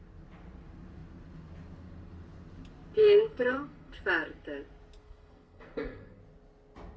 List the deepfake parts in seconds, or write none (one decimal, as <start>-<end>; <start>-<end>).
3.0-4.0; 5.0-6.2